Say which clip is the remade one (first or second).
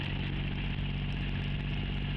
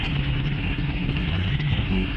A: second